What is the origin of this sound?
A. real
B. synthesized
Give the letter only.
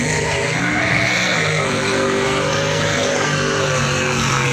B